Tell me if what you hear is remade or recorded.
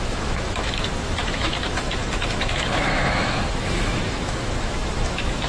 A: remade